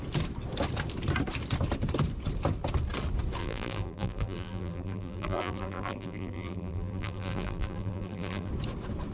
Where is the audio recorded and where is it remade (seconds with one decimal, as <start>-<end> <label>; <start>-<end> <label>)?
0.0-3.4 recorded; 3.4-8.5 remade; 8.5-9.1 recorded